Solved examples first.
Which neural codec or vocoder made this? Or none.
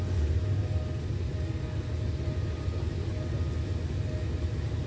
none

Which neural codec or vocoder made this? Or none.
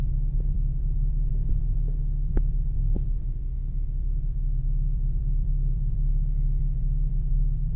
vocoder, BigVGAN v2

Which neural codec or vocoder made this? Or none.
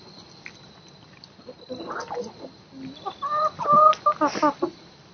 none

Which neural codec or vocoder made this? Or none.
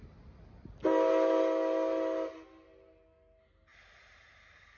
none